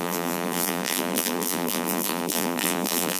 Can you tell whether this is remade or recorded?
remade